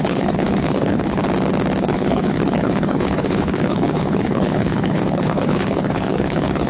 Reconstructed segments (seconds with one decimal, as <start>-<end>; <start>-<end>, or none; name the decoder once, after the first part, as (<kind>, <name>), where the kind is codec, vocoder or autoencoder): 0.0-1.2 (codec, HILCodec); 1.8-6.7